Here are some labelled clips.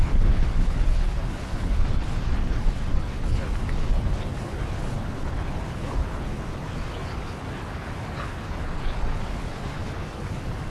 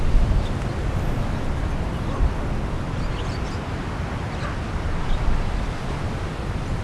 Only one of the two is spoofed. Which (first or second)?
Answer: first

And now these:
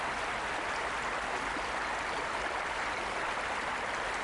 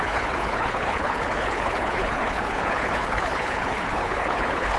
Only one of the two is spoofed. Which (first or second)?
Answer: second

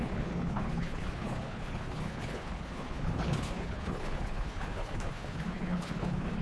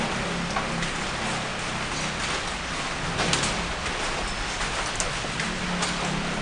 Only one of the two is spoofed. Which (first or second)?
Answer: first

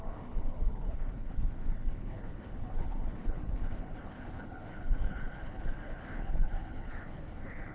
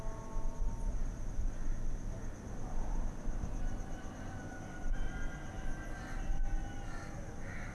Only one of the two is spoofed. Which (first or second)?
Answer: first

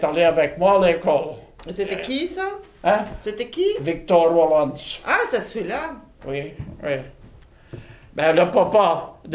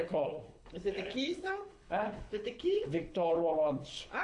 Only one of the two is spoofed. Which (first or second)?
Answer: second